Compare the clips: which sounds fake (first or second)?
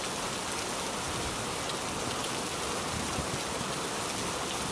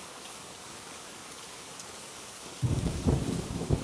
second